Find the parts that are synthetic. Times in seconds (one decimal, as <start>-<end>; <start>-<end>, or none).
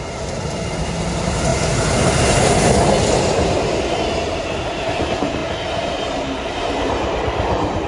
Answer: 0.0-1.5; 4.4-5.4; 6.5-7.9